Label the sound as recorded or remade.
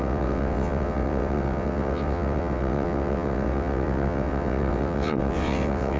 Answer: remade